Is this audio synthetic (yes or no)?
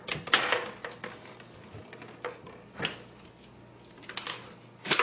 no